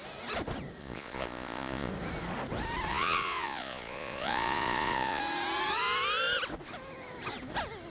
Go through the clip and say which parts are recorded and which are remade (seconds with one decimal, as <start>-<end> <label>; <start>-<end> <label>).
0.0-0.8 recorded; 0.8-1.9 remade; 1.9-2.9 recorded; 2.9-5.2 remade; 5.2-7.9 recorded